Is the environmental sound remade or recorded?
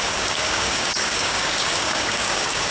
remade